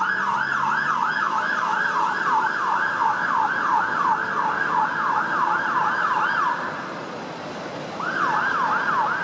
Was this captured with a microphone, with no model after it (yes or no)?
yes